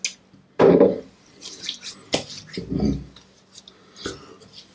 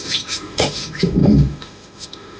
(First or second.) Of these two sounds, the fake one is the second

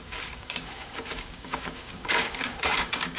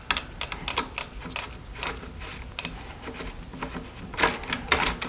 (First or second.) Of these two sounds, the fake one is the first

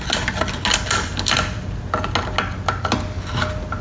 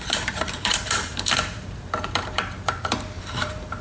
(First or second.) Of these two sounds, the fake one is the second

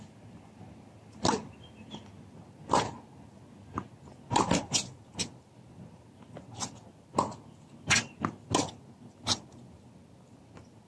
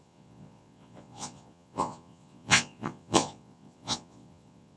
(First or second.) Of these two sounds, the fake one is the second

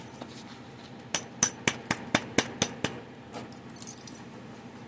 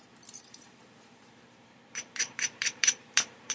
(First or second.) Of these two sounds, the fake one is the second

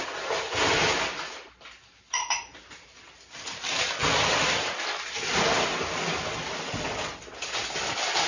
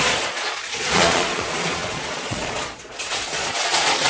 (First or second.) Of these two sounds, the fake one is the second